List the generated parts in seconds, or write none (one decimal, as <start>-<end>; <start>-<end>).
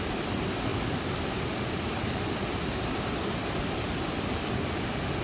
none